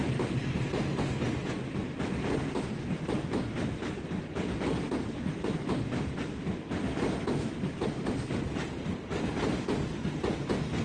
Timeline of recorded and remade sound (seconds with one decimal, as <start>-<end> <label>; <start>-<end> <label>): 0.0-1.4 remade; 1.4-10.8 recorded